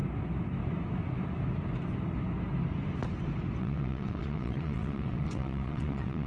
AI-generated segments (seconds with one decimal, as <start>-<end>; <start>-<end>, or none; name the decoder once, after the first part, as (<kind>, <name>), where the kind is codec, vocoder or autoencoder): 3.6-6.3 (vocoder, WaveNeXt)